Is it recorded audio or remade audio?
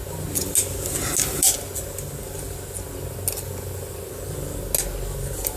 recorded